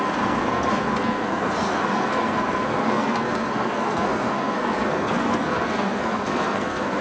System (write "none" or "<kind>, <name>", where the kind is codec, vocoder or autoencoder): codec, SNAC